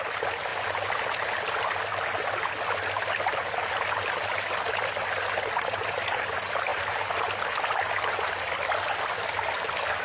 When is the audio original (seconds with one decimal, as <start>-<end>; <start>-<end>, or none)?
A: 0.0-10.0